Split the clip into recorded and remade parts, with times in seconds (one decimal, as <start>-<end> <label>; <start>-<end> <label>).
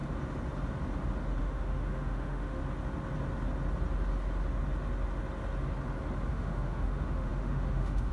0.0-1.4 recorded; 1.4-2.6 remade; 2.6-6.3 recorded; 6.3-8.1 remade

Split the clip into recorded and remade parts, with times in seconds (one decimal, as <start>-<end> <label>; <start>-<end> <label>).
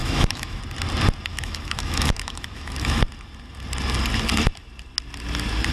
0.0-0.6 remade; 0.6-1.3 recorded; 1.3-3.0 remade; 3.0-5.7 recorded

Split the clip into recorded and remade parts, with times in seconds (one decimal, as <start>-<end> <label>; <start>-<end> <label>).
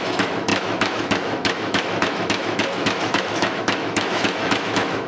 0.0-5.1 remade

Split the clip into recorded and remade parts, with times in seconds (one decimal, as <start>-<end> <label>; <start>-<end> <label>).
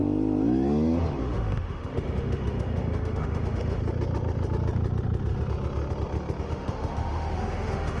0.0-1.2 recorded; 1.2-3.8 remade; 3.8-6.4 recorded; 6.4-8.0 remade